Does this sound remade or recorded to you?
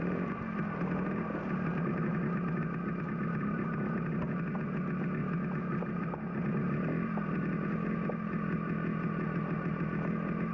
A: recorded